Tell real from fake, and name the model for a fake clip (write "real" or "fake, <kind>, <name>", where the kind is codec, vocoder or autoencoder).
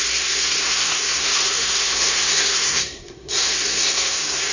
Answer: fake, codec, SNAC